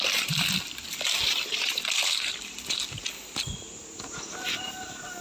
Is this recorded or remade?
recorded